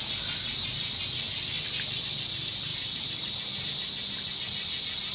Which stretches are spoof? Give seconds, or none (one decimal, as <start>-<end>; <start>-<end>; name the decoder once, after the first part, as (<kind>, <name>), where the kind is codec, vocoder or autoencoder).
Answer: none